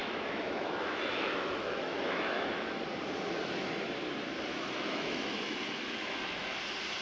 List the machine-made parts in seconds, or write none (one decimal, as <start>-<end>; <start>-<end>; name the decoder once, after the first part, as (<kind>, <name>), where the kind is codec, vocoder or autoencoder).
0.0-2.8 (autoencoder, DAC-VAE); 4.5-6.6